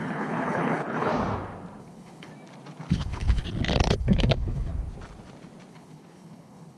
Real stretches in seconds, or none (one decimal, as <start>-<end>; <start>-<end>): 1.1-1.8; 2.3-2.9; 3.4-4.0; 4.7-5.7

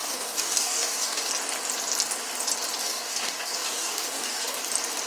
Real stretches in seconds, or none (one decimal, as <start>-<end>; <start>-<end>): 1.3-2.8; 4.6-5.1

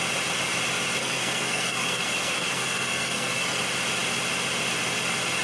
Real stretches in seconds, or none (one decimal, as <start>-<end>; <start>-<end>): 0.0-1.0; 3.6-5.4

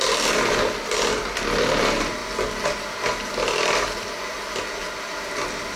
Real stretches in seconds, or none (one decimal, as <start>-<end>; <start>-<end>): 0.0-5.8

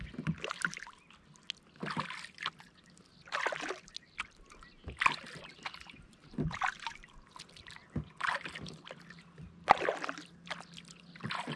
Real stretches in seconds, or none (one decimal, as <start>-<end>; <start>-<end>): 0.0-6.3; 7.3-11.6

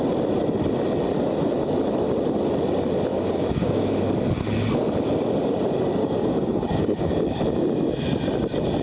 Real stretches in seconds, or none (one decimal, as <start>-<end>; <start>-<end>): 0.0-3.1; 3.9-6.0; 7.4-8.8